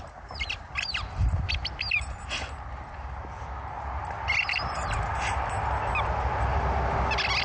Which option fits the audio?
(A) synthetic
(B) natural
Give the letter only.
B